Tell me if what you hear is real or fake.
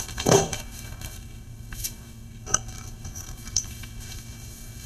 fake